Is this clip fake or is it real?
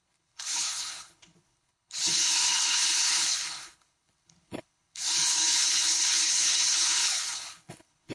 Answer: fake